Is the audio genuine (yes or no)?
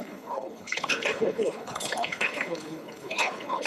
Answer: no